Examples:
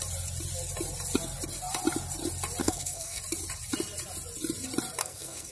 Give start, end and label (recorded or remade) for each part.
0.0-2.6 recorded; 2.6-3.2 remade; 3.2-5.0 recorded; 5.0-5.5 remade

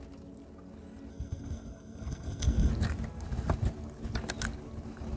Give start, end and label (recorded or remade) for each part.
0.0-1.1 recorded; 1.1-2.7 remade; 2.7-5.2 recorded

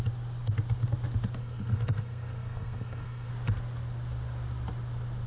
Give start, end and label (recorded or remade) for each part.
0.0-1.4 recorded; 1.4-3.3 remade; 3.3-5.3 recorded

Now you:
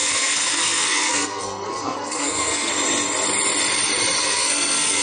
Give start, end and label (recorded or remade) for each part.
0.0-2.7 remade; 2.7-4.2 recorded; 4.2-5.0 remade

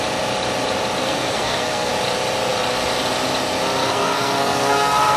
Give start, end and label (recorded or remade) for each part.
0.0-1.0 recorded; 1.0-1.9 remade; 1.9-3.8 recorded; 3.8-5.2 remade

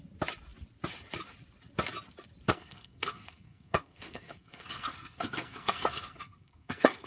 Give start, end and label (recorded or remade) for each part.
0.0-2.5 recorded; 2.5-7.1 remade